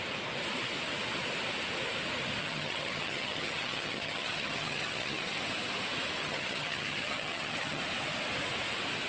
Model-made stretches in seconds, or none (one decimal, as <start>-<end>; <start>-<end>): 2.4-5.4; 6.2-7.8